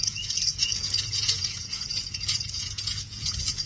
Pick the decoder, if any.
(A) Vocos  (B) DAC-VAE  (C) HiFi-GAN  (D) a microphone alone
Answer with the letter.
A